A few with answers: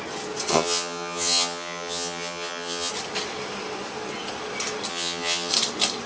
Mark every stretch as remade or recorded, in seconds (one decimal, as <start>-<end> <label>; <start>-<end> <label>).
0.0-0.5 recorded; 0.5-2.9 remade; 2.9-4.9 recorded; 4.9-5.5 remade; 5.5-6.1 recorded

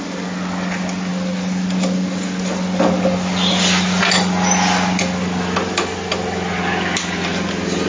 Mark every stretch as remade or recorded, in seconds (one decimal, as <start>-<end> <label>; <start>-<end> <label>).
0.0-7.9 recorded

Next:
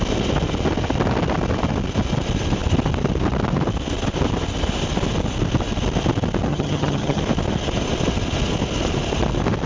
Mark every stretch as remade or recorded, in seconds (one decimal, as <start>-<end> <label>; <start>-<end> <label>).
0.0-6.5 recorded; 6.5-7.2 remade; 7.2-9.7 recorded